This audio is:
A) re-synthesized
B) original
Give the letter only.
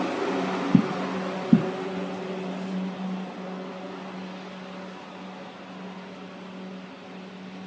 B